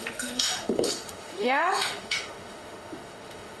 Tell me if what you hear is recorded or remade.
remade